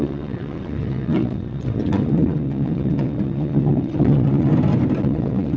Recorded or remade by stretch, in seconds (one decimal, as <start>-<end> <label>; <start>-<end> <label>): 0.0-4.5 remade; 4.5-5.0 recorded; 5.0-5.6 remade